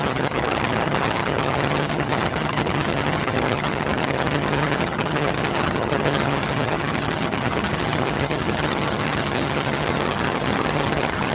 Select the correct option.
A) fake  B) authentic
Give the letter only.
A